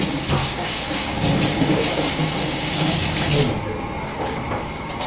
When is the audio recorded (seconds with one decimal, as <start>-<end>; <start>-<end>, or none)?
0.0-0.4; 3.3-4.1